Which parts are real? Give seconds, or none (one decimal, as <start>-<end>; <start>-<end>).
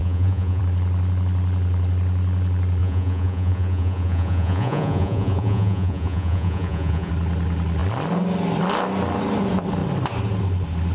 0.6-2.8; 7.1-10.9